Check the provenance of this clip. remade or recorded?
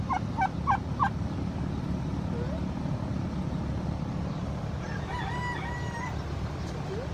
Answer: recorded